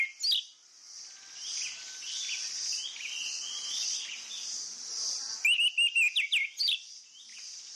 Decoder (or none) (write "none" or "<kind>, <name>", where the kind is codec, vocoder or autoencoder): none